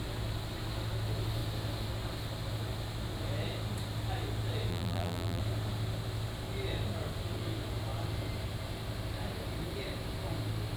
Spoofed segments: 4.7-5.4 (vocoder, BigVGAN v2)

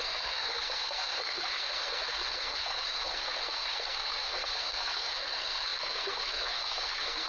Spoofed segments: 0.0-7.3 (codec, SNAC)

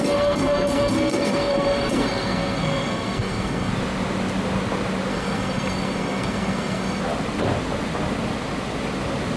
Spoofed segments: 0.0-3.7 (codec, SNAC); 5.1-7.0

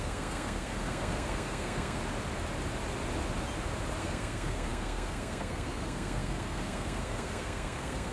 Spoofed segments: 0.0-2.0 (codec, SNAC); 4.0-8.1

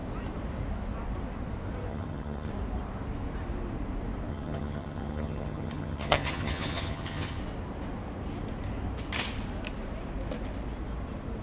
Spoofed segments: 1.9-2.5 (vocoder, HiFi-GAN); 4.3-7.4

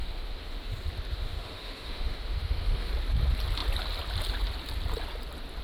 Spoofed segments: 0.0-0.7 (autoencoder, DAC-VAE); 1.1-2.9